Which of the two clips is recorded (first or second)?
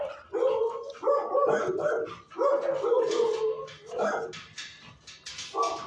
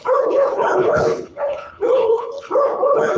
first